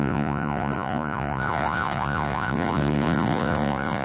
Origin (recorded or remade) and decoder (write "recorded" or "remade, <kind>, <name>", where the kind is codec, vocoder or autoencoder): remade, vocoder, Vocos